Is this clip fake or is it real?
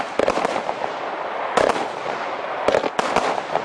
real